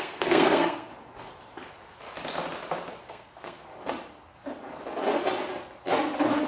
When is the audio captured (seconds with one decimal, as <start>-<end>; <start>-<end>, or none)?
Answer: 0.9-3.1; 3.7-6.5